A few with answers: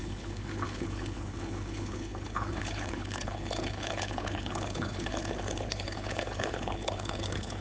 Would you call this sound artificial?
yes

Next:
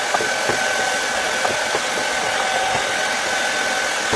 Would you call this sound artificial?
no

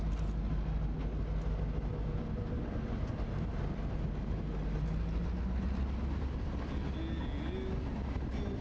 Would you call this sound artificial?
no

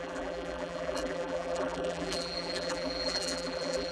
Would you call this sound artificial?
yes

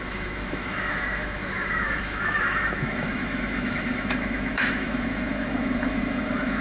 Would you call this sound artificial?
yes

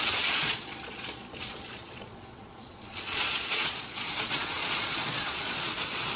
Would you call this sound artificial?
yes